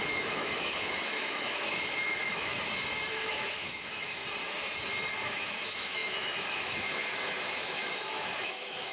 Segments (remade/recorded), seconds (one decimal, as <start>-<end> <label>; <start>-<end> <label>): 0.0-2.5 remade; 2.5-3.1 recorded; 3.1-4.2 remade; 4.2-5.2 recorded; 5.2-8.9 remade